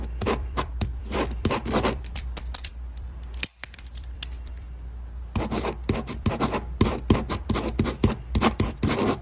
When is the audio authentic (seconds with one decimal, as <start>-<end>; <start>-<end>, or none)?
none